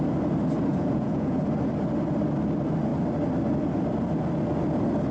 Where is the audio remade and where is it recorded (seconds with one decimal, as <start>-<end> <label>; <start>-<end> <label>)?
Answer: 0.0-0.7 recorded; 0.7-1.4 remade; 1.4-5.1 recorded